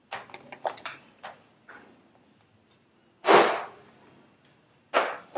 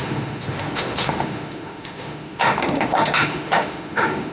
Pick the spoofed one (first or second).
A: second